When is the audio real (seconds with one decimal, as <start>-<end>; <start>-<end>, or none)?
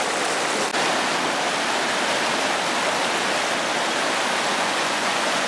0.0-4.5